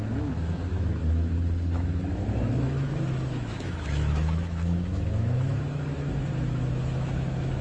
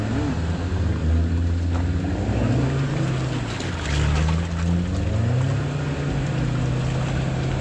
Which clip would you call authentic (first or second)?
second